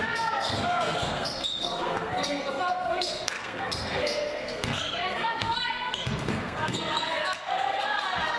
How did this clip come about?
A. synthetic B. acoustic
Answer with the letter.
A